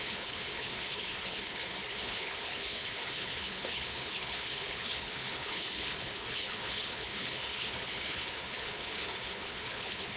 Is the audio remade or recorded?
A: remade